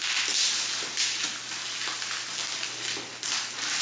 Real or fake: real